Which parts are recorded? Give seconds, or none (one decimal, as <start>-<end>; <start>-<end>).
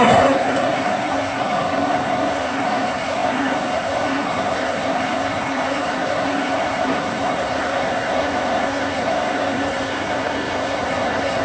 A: none